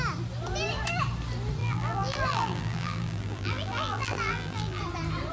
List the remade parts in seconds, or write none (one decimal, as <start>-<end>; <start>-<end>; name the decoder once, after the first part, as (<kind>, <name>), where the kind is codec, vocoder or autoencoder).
1.6-4.8 (vocoder, BigVGAN v2)